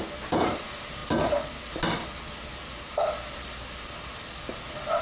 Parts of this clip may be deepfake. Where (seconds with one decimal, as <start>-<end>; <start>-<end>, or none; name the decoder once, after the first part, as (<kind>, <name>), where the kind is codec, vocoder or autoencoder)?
none